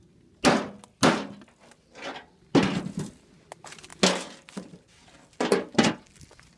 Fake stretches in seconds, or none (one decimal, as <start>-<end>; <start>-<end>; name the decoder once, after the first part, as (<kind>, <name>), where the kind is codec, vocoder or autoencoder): none